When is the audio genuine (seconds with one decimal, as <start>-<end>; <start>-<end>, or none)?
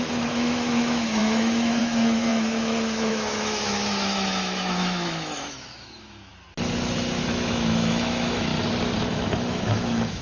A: 6.3-7.2; 8.5-9.1